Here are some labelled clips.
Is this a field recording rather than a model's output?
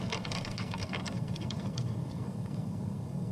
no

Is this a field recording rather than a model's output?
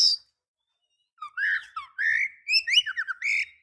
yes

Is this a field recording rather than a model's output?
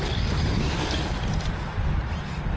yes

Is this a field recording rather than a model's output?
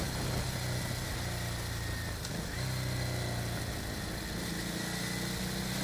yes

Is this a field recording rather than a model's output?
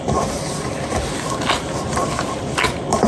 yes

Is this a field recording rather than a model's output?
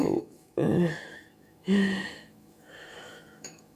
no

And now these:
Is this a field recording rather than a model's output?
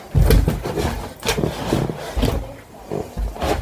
yes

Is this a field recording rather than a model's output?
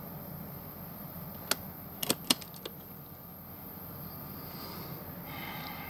yes